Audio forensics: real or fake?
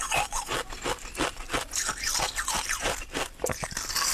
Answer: fake